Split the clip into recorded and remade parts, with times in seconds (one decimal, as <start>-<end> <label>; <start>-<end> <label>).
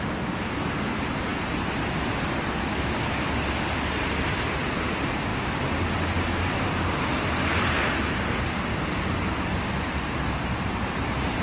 0.0-11.4 recorded